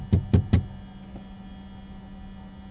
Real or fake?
real